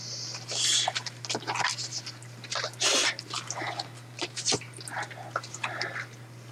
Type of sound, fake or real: real